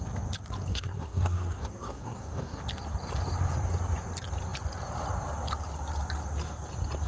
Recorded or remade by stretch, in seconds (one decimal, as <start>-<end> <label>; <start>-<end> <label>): 0.0-0.7 recorded; 0.7-2.6 remade; 2.6-7.1 recorded